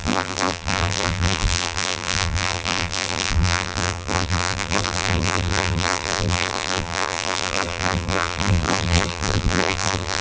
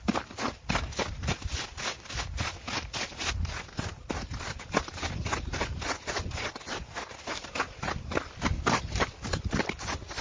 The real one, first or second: second